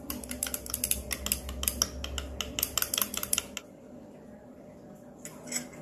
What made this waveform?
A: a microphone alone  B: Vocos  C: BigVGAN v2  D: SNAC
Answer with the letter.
A